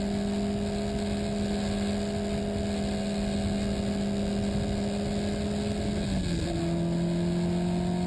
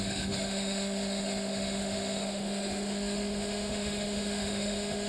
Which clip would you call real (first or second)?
first